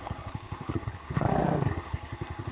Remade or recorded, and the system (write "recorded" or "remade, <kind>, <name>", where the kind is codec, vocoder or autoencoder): remade, codec, SNAC